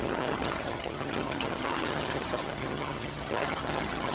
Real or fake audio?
fake